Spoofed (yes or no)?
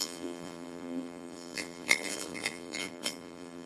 yes